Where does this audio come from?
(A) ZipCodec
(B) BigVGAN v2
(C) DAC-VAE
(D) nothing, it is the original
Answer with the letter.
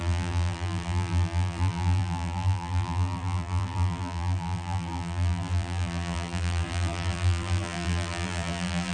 B